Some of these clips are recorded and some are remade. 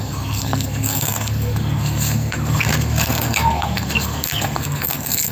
remade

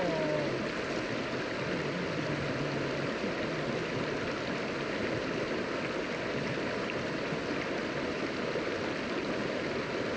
recorded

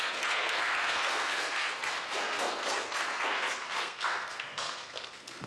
remade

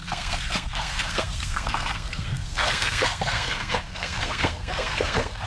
remade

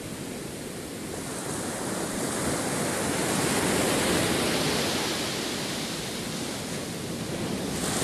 recorded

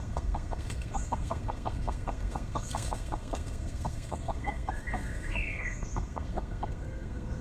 remade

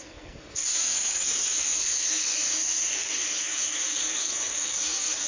remade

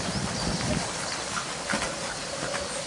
recorded